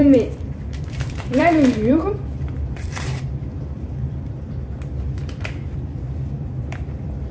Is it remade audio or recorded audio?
remade